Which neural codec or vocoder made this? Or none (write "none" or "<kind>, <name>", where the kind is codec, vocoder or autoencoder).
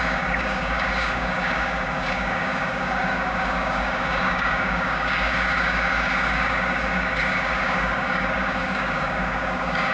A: codec, DAC